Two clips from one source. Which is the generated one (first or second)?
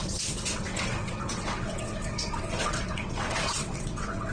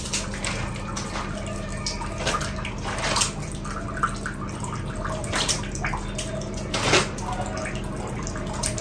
first